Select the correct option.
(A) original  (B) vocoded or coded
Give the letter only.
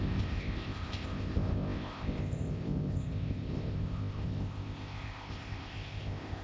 B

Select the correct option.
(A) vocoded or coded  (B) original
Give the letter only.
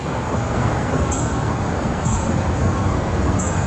A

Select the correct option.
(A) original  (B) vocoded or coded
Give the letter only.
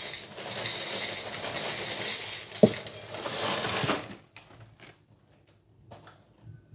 A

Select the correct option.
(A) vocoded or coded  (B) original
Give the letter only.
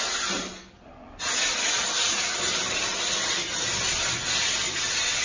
B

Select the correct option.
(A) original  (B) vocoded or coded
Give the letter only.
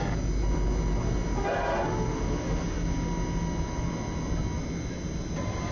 A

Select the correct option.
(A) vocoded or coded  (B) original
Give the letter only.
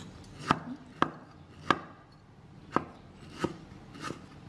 B